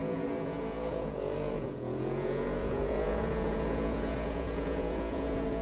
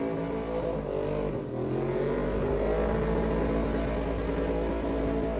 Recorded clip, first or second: second